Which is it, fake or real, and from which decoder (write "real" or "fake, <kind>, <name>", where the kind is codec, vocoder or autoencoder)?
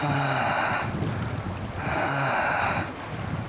real